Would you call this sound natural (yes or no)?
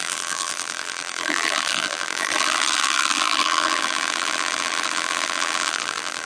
no